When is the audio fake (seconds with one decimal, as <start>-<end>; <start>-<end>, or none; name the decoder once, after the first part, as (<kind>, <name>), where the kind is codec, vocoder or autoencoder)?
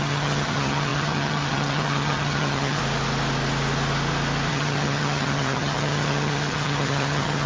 0.0-2.8 (vocoder, HiFi-GAN); 4.5-7.5